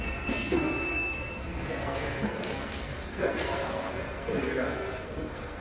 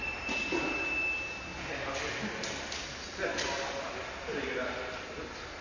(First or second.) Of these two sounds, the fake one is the first